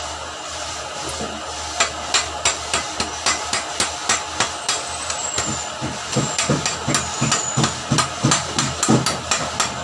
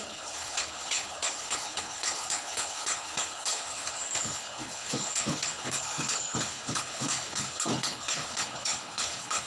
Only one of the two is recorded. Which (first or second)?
first